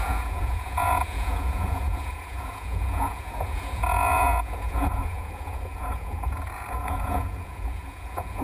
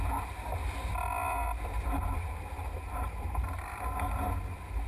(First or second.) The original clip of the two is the second